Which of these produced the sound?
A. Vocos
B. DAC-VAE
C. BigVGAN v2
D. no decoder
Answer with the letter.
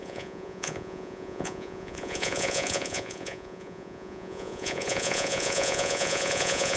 A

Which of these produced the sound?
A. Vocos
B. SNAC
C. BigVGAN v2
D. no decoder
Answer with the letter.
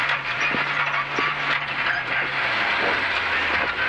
D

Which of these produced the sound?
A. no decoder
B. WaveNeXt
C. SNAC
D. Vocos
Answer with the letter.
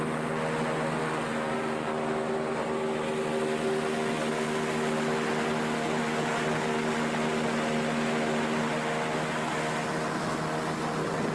A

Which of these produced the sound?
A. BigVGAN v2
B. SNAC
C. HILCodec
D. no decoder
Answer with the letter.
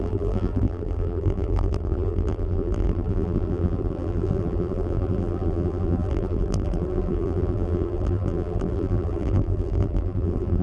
A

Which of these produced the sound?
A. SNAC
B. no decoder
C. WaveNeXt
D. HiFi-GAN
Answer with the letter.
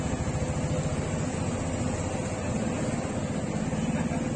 B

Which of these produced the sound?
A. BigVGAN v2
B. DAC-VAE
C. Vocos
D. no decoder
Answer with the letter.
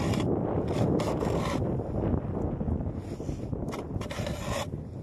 D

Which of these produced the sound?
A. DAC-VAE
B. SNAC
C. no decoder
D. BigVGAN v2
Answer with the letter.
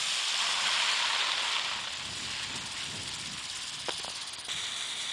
C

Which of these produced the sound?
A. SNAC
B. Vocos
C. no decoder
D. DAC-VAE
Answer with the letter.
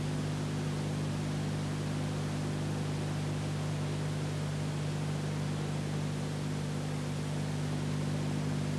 C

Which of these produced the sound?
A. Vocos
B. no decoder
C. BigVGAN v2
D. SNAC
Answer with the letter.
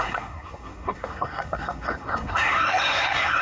D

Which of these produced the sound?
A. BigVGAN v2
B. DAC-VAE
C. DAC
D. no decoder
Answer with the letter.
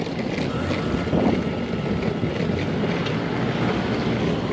D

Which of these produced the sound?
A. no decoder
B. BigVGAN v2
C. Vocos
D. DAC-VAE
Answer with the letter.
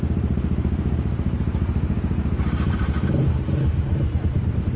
B